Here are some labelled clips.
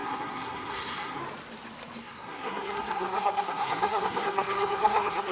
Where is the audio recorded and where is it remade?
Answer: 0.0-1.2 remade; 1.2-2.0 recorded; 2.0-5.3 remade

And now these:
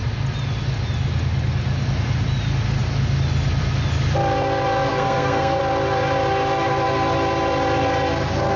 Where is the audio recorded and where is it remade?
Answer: 0.0-4.9 recorded; 4.9-5.6 remade; 5.6-8.6 recorded

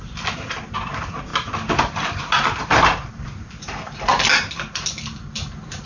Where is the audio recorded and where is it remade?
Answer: 0.0-5.9 recorded

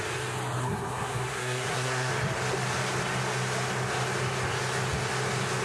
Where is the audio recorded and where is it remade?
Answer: 0.0-0.6 recorded; 0.6-2.1 remade; 2.1-5.6 recorded

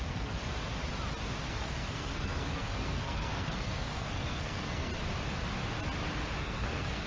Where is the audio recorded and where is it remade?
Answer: 0.0-0.4 remade; 0.4-1.5 recorded; 1.5-4.9 remade; 4.9-6.4 recorded; 6.4-7.1 remade

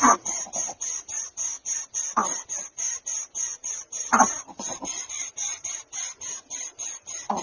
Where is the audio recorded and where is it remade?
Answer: 0.0-3.5 recorded; 3.5-5.8 remade; 5.8-7.4 recorded